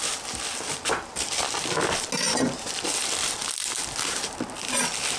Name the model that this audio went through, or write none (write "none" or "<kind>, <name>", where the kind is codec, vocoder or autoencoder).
none